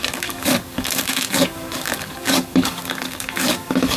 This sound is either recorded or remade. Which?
remade